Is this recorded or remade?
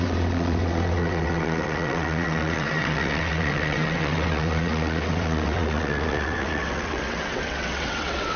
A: remade